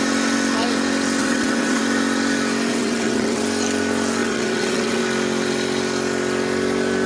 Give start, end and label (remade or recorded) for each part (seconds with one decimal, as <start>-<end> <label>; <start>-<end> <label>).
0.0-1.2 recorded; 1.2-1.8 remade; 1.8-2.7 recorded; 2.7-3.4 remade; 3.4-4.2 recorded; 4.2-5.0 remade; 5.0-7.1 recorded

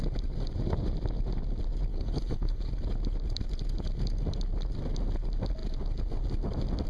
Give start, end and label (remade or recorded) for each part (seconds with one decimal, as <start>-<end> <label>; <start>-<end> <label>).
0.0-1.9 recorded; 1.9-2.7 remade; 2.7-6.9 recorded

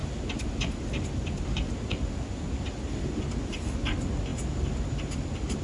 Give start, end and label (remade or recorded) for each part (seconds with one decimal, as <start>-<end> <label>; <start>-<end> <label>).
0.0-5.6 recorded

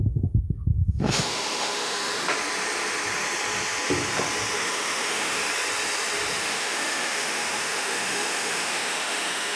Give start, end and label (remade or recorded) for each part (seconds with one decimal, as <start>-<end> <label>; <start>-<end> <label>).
0.0-2.2 remade; 2.2-4.5 recorded; 4.5-5.4 remade; 5.4-6.4 recorded; 6.4-9.6 remade

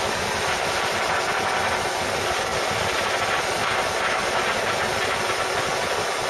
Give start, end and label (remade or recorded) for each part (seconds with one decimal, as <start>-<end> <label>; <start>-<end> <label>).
0.0-6.3 recorded

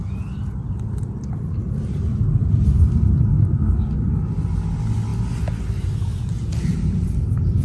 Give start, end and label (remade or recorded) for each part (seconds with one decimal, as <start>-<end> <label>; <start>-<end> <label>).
0.0-7.6 recorded